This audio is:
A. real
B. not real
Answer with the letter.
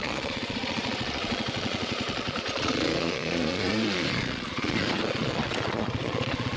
B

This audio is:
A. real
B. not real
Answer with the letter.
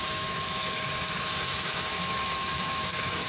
B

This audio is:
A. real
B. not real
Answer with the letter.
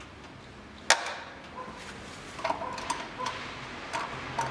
A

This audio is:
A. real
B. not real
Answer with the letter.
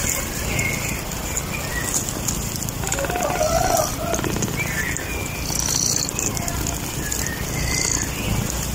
A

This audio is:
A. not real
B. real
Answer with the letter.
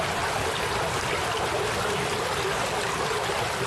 B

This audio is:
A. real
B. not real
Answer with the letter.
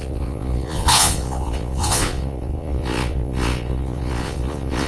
B